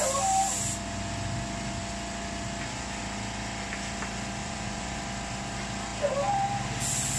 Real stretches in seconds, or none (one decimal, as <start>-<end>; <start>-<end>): 0.0-4.4; 5.0-7.2